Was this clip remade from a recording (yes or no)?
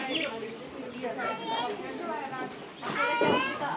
no